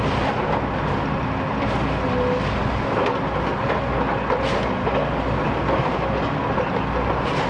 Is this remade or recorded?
recorded